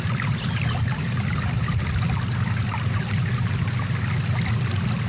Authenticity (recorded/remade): recorded